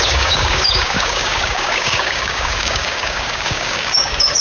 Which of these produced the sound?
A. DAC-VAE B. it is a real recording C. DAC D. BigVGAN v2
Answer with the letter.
C